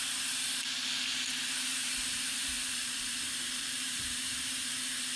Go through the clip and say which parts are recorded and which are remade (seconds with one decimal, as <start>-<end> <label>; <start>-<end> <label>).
0.0-1.7 recorded; 1.7-4.8 remade; 4.8-5.2 recorded